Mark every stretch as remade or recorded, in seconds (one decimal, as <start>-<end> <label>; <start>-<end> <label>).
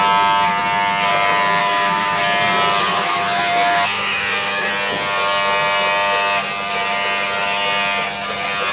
0.0-1.6 recorded; 1.6-2.2 remade; 2.2-2.9 recorded; 2.9-4.7 remade; 4.7-8.7 recorded